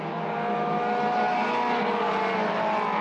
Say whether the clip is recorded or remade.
recorded